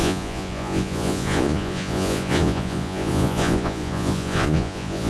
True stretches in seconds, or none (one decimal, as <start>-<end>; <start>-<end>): none